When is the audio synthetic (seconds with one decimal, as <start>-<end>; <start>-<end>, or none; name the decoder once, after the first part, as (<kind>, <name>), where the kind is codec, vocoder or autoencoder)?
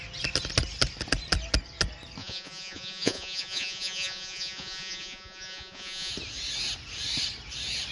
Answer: 2.2-6.1 (vocoder, Vocos)